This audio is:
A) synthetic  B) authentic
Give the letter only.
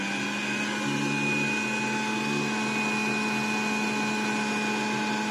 B